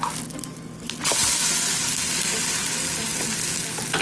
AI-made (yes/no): no